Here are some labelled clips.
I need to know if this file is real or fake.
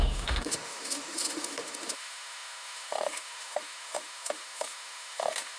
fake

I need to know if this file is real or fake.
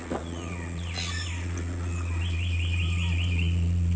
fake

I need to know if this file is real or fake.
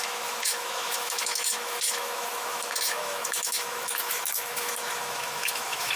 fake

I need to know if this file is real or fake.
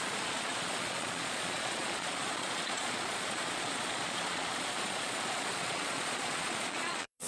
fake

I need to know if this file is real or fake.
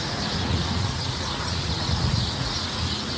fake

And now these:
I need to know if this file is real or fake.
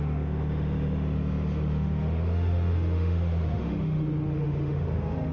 fake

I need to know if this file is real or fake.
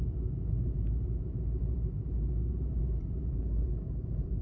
fake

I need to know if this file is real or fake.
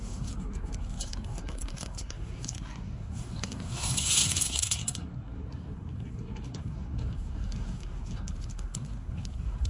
fake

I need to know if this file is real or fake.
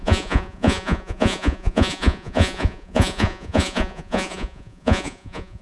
fake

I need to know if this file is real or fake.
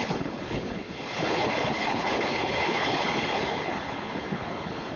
fake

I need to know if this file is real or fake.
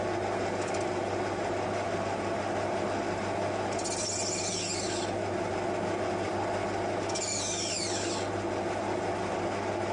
real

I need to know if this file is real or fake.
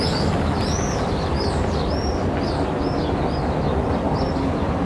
real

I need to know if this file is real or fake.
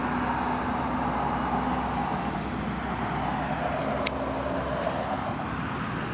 real